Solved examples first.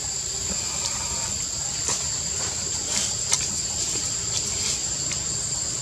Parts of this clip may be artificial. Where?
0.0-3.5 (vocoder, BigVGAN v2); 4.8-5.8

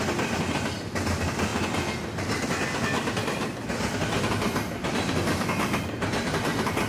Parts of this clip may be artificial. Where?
none

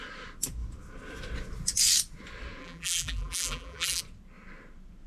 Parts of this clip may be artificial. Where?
2.6-4.0 (vocoder, BigVGAN v2)

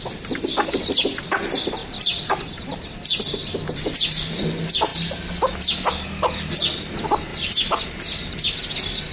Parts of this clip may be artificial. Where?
1.8-2.8 (vocoder, BigVGAN v2); 3.4-4.4; 7.3-7.8

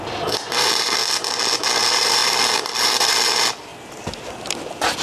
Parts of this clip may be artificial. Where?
0.0-1.0 (vocoder, BigVGAN v2); 1.8-3.7; 4.3-5.0

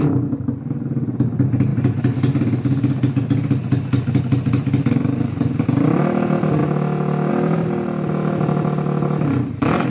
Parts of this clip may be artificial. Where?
none

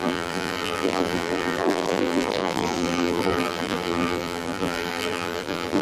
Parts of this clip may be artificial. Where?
0.0-5.8 (vocoder, BigVGAN v2)

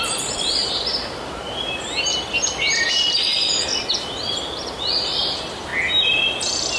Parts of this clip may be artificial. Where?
0.0-0.6 (vocoder, BigVGAN v2); 1.5-3.3; 3.9-5.7